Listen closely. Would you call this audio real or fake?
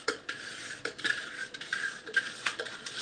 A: fake